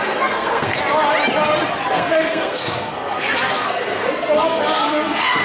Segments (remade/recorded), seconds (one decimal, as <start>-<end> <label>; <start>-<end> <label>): 0.0-0.8 remade; 0.8-1.9 recorded; 1.9-5.4 remade